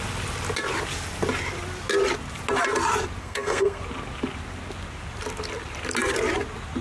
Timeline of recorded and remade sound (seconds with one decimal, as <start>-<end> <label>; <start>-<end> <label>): 0.0-3.2 recorded; 3.2-3.8 remade; 3.8-6.8 recorded